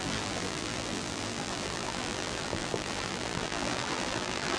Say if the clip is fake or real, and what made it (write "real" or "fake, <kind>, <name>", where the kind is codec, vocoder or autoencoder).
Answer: fake, vocoder, BigVGAN v2